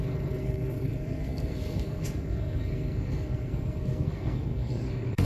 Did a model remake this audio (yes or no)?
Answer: yes